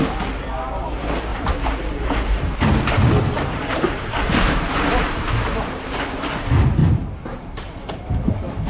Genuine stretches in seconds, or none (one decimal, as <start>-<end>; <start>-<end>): 0.0-1.3; 6.2-6.8; 7.5-8.7